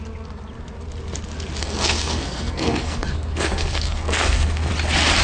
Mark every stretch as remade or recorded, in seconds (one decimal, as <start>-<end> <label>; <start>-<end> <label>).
0.0-1.6 recorded; 1.6-4.7 remade; 4.7-5.2 recorded